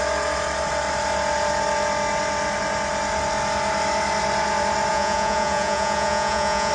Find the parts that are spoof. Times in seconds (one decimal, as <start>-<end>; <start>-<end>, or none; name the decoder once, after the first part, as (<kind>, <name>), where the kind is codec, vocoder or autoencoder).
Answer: 4.9-6.7 (vocoder, Vocos)